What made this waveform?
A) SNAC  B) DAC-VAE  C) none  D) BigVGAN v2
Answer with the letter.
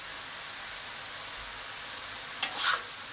C